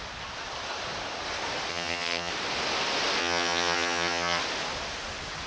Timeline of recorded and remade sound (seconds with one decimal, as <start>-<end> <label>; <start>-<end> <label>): 0.0-1.7 recorded; 1.7-2.3 remade; 2.3-3.2 recorded; 3.2-4.4 remade; 4.4-5.5 recorded